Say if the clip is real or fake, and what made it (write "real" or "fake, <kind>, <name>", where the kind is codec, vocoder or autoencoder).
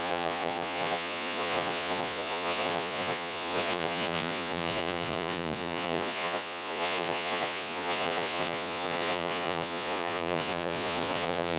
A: fake, vocoder, Vocos